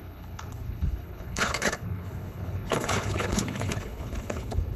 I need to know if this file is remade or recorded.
remade